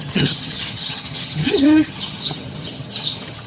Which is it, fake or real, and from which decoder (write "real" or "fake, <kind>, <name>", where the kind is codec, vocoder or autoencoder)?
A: fake, vocoder, HiFi-GAN